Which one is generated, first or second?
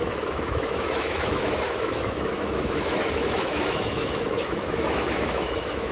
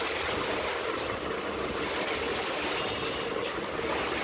first